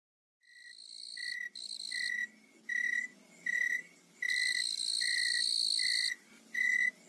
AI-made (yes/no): no